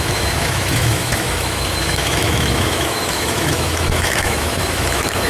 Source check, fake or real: fake